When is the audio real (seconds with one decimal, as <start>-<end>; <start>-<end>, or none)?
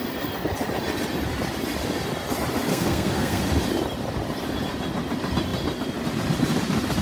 0.0-2.7; 3.4-7.0